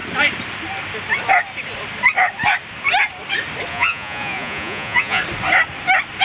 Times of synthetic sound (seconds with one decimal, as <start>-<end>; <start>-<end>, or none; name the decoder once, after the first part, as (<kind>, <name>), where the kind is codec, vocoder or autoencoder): 3.7-5.2 (vocoder, Vocos)